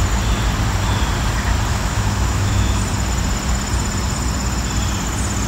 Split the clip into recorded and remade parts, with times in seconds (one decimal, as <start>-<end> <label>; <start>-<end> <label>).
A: 0.0-1.7 recorded; 1.7-2.8 remade; 2.8-5.5 recorded